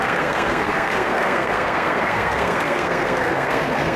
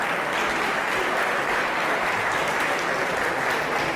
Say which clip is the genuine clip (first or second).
second